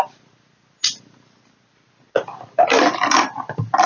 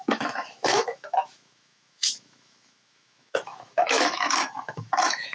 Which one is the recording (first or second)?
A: first